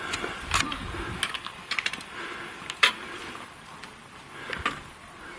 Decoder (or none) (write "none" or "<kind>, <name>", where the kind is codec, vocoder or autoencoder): none